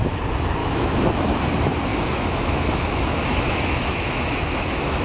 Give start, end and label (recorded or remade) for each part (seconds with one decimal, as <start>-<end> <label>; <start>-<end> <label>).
0.0-0.6 recorded; 0.6-1.4 remade; 1.4-1.9 recorded; 1.9-5.0 remade